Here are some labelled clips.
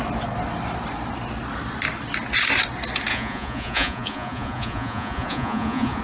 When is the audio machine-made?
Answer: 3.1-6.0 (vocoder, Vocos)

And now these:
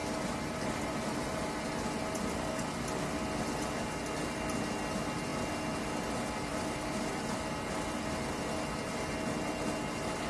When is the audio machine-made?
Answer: none

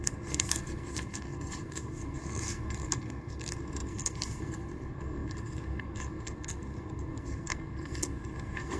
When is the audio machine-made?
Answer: 0.0-8.8 (codec, SNAC)

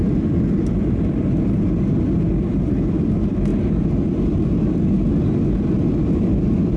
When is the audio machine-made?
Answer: none